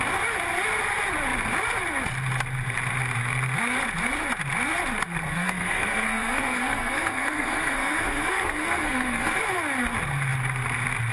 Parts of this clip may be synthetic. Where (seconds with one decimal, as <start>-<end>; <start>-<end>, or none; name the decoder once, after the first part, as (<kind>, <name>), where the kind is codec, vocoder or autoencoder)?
5.3-9.4 (codec, SNAC)